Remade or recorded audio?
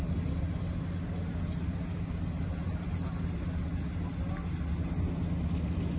recorded